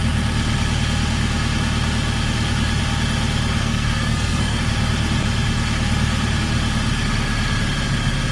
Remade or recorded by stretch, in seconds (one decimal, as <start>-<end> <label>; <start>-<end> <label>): 0.0-3.6 recorded; 3.6-4.6 remade; 4.6-8.3 recorded